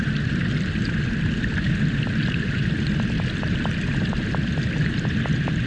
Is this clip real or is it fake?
real